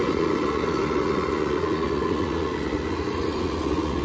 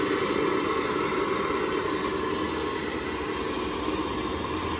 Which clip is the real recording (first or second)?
second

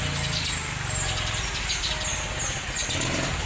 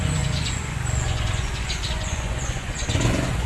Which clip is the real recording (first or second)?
first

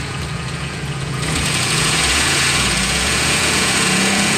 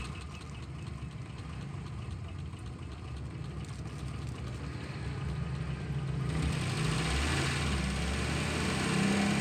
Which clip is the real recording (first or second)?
second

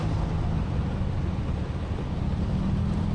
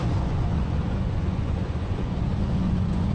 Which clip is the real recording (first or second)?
first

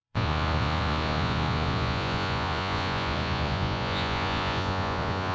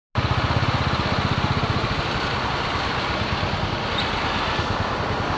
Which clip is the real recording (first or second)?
second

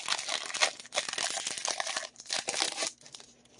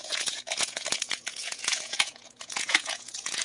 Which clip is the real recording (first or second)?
first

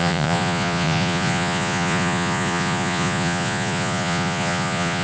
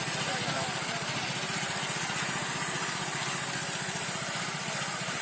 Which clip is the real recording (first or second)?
second